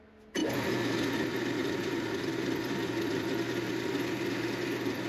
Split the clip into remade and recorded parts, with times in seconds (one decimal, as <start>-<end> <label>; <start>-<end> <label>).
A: 0.0-0.4 recorded; 0.4-1.1 remade; 1.1-1.6 recorded; 1.6-5.1 remade